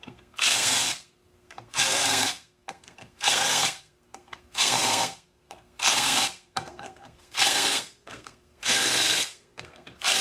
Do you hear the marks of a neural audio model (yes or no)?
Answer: yes